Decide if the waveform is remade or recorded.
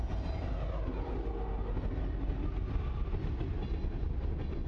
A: recorded